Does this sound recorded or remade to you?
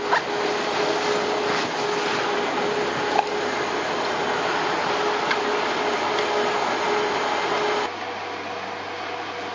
recorded